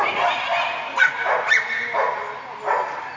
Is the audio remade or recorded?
recorded